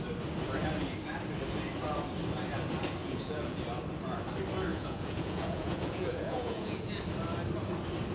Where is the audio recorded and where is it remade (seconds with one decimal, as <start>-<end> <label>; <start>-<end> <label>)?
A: 0.0-3.0 recorded; 3.0-3.6 remade; 3.6-4.7 recorded; 4.7-7.0 remade; 7.0-8.1 recorded